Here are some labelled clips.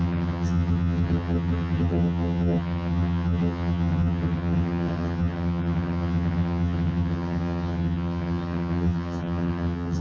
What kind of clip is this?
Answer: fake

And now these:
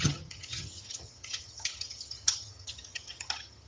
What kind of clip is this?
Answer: fake